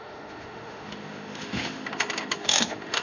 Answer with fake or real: fake